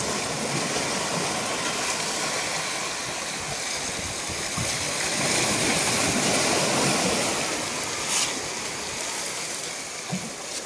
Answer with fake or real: real